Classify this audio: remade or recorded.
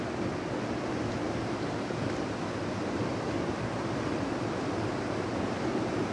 recorded